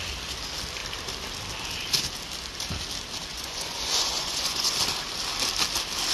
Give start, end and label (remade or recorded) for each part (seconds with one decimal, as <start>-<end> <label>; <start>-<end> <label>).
0.0-3.3 recorded; 3.3-4.7 remade; 4.7-6.1 recorded